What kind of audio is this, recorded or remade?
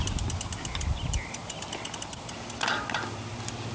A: recorded